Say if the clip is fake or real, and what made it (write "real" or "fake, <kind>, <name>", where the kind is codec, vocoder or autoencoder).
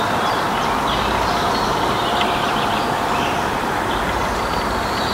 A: fake, vocoder, BigVGAN v2